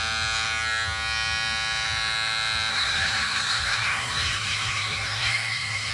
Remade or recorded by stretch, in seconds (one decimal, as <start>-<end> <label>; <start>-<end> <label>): 0.0-2.7 recorded; 2.7-5.9 remade